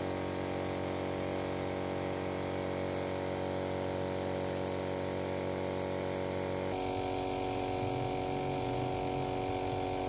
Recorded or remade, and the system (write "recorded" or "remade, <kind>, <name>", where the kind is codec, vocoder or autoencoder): recorded